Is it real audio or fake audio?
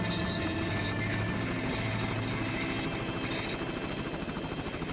real